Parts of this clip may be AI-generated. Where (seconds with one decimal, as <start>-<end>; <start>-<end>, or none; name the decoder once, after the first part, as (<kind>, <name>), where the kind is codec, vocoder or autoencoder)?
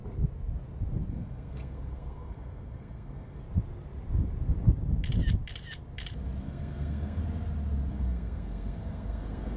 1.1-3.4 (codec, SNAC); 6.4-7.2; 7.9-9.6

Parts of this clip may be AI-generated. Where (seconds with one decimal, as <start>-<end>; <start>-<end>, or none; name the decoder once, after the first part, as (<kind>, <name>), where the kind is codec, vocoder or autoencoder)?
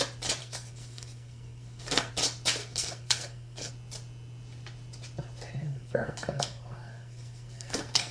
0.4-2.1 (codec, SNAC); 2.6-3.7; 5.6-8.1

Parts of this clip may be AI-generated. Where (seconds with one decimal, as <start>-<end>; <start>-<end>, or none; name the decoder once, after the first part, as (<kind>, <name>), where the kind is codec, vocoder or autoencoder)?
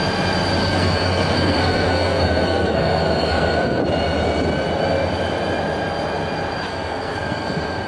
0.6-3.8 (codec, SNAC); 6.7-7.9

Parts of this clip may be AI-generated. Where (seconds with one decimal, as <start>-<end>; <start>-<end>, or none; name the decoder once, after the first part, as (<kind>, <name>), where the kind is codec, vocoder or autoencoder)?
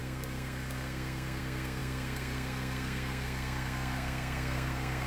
0.0-5.1 (codec, SNAC)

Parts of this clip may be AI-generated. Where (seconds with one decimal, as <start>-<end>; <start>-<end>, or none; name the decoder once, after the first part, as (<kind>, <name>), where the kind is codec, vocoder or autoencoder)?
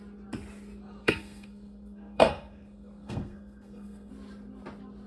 1.0-4.1 (codec, SNAC)